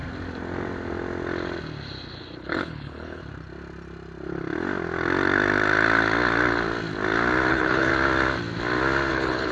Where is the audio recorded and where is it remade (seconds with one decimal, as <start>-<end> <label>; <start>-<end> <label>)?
0.0-2.4 recorded; 2.4-3.2 remade; 3.2-7.5 recorded; 7.5-7.9 remade; 7.9-9.1 recorded; 9.1-9.5 remade